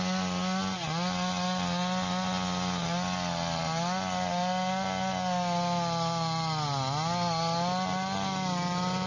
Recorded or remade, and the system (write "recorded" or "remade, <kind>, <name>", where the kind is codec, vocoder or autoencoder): recorded